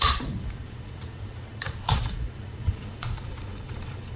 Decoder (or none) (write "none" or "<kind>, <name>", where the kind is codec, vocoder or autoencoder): vocoder, Vocos